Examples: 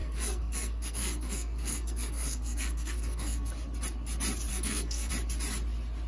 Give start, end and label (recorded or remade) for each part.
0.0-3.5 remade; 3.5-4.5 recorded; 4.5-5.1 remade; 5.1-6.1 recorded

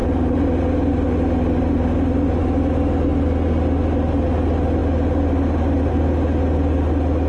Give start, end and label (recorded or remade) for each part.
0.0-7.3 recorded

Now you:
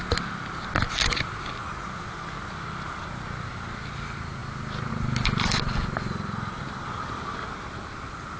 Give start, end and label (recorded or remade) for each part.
0.0-8.4 recorded

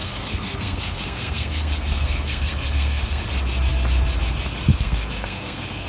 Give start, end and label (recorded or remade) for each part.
0.0-3.2 remade; 3.2-4.7 recorded; 4.7-5.9 remade

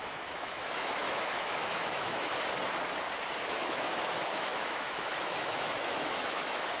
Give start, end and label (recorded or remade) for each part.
0.0-2.3 remade; 2.3-3.4 recorded; 3.4-6.8 remade

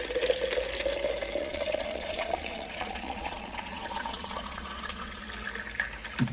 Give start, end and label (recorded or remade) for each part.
0.0-1.4 recorded; 1.4-5.2 remade; 5.2-6.3 recorded

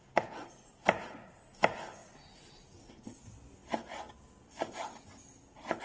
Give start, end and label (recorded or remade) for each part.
0.0-5.8 recorded